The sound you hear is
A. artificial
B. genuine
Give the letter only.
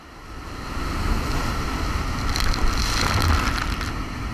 B